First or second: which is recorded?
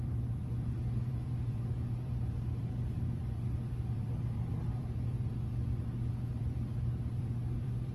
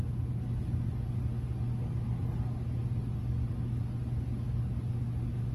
second